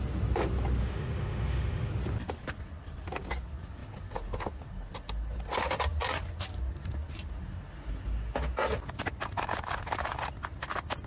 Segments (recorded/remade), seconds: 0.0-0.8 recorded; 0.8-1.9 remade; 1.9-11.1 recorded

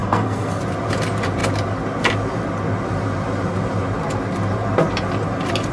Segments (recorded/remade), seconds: 0.0-0.6 remade; 0.6-5.7 recorded

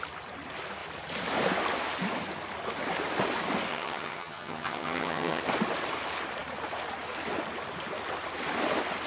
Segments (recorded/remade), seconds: 0.0-3.7 recorded; 3.7-5.4 remade; 5.4-9.1 recorded

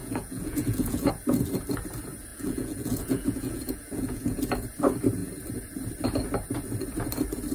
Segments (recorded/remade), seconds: 0.0-1.1 remade; 1.1-2.3 recorded; 2.3-4.4 remade; 4.4-7.5 recorded

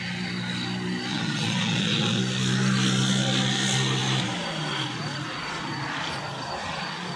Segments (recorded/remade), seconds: 0.0-1.1 recorded; 1.1-2.2 remade; 2.2-7.2 recorded